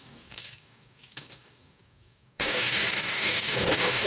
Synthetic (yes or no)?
yes